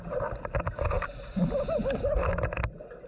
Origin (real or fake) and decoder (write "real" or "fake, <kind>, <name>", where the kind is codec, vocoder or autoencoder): real